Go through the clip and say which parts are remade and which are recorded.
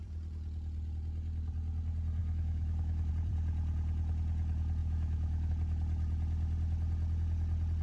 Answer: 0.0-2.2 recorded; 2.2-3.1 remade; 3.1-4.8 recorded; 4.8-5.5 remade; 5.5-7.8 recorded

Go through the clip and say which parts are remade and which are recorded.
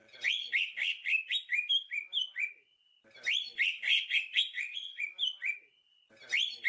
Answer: 0.0-0.5 remade; 0.5-3.9 recorded; 3.9-5.0 remade; 5.0-6.7 recorded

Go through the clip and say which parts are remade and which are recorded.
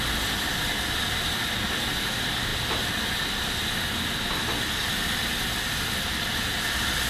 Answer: 0.0-7.1 recorded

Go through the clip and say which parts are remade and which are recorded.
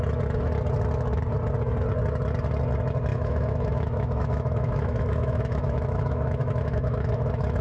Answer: 0.0-3.1 recorded; 3.1-7.6 remade